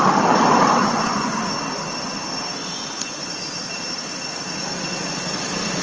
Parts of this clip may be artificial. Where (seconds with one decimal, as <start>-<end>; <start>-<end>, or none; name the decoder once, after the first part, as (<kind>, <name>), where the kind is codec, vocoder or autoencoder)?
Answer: 0.8-1.4 (vocoder, Vocos); 2.6-3.4